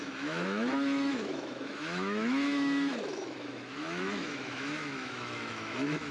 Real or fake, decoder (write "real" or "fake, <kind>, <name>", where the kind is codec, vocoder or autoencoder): fake, autoencoder, DAC-VAE